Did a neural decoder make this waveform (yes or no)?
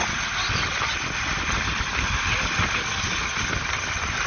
no